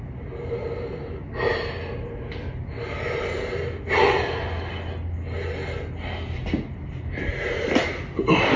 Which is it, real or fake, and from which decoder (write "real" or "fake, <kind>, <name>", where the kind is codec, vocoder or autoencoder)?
real